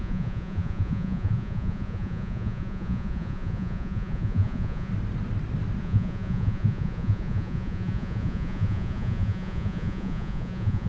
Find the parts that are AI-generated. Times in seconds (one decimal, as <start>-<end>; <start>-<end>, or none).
0.0-4.9; 5.8-10.9